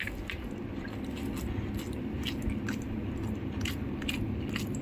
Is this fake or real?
real